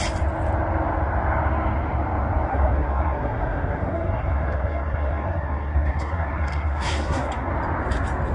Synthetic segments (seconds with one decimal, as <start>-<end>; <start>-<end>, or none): 2.5-7.5